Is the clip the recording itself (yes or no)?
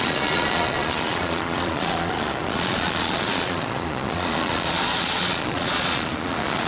no